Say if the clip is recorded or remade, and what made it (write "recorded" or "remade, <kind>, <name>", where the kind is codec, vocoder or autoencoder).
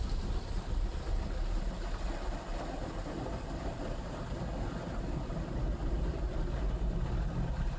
recorded